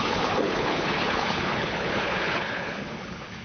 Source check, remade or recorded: remade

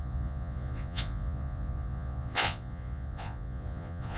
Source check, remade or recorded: remade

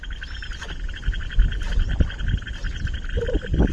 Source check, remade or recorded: recorded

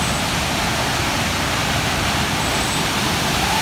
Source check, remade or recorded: recorded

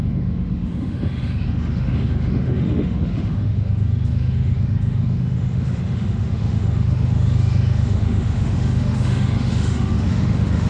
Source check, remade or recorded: remade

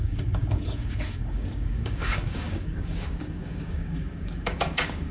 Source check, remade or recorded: remade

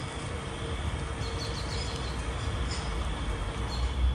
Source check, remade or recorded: recorded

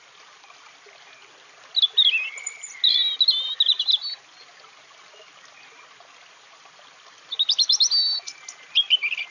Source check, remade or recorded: recorded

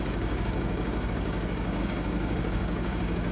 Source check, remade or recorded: remade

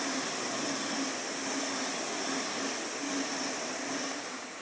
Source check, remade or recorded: recorded